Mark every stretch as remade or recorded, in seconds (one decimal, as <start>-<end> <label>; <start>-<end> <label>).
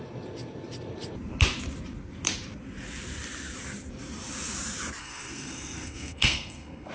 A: 0.0-5.0 recorded; 5.0-6.9 remade